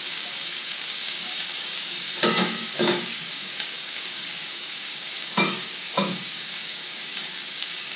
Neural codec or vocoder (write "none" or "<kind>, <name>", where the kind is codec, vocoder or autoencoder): codec, DAC